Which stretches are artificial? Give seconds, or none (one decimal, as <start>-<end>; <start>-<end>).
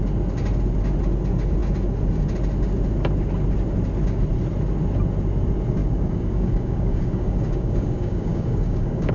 5.8-9.1